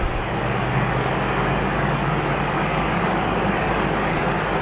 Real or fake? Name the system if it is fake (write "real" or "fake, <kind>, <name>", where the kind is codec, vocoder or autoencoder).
fake, codec, DAC